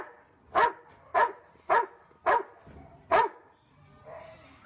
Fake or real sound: real